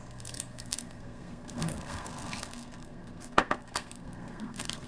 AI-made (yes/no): yes